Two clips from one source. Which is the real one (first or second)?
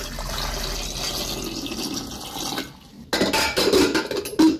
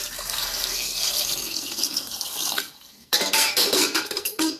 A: first